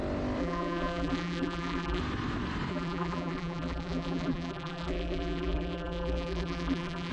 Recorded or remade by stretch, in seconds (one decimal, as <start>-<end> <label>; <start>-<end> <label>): 0.0-0.4 recorded; 0.4-2.0 remade; 2.0-2.7 recorded; 2.7-7.1 remade